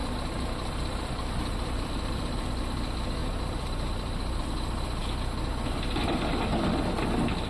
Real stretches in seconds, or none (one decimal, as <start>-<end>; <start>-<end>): 2.4-3.2; 4.4-7.5